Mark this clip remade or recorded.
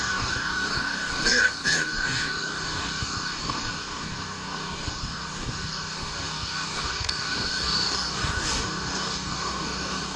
remade